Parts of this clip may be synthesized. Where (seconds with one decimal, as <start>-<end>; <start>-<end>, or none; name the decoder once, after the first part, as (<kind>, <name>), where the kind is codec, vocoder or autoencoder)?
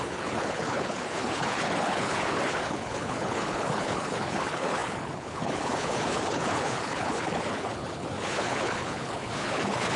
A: 0.0-10.0 (codec, HILCodec)